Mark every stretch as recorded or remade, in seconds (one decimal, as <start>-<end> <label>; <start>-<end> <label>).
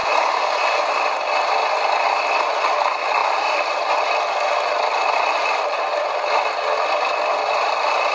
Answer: 0.0-8.1 recorded